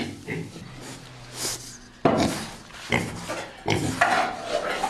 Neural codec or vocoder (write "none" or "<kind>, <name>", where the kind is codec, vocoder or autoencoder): none